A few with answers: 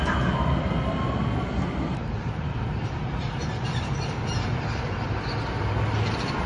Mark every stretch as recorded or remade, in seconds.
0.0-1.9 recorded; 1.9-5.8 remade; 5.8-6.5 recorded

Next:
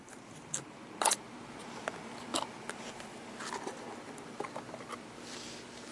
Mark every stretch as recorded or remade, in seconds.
0.0-5.9 recorded

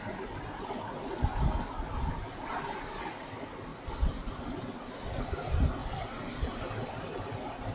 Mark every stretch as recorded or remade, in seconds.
0.0-3.7 recorded; 3.7-4.4 remade; 4.4-7.7 recorded

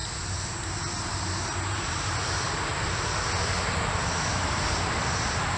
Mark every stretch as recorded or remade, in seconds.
0.0-1.0 recorded; 1.0-2.7 remade; 2.7-5.6 recorded

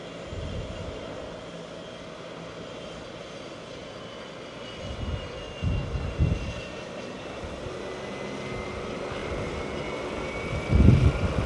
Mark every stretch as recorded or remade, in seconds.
0.0-1.3 remade; 1.3-3.8 recorded; 3.8-7.8 remade; 7.8-9.2 recorded; 9.2-10.7 remade; 10.7-11.5 recorded

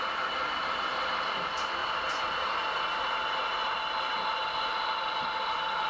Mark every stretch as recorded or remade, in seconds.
0.0-1.8 recorded; 1.8-3.0 remade; 3.0-4.7 recorded; 4.7-5.9 remade